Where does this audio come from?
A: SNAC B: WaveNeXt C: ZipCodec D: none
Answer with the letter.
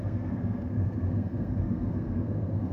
A